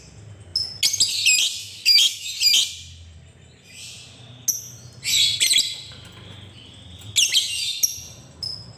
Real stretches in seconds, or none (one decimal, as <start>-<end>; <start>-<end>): 0.0-1.6; 2.3-8.8